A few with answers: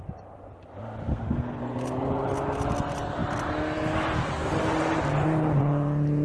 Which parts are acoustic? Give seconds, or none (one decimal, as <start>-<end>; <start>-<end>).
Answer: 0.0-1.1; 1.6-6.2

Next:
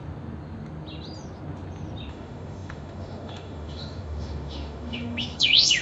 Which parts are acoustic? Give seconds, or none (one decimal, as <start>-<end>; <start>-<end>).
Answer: 0.0-2.1

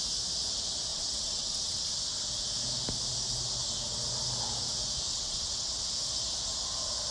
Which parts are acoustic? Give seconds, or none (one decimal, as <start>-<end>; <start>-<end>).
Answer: 0.0-0.9; 1.9-5.1; 5.9-7.1

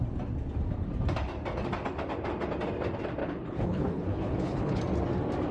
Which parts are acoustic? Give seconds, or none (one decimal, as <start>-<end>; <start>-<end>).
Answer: 0.0-3.2; 4.8-5.5

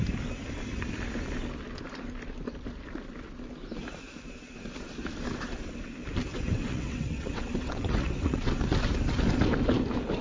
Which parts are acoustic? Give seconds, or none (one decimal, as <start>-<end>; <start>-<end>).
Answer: 0.0-6.3; 8.6-10.2